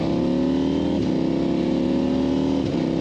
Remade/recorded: recorded